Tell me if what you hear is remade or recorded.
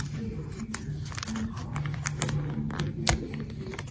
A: recorded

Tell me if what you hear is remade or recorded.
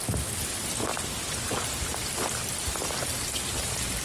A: recorded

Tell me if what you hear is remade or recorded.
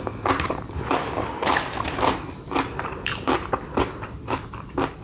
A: recorded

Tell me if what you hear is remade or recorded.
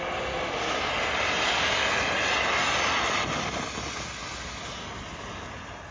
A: recorded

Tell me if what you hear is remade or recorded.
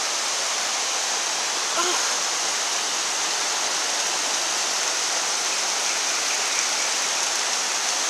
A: recorded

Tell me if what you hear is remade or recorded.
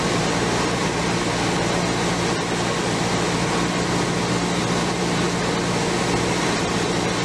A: recorded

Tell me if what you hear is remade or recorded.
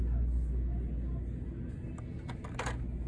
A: recorded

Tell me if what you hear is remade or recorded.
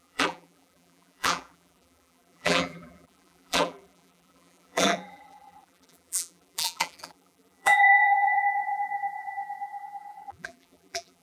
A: remade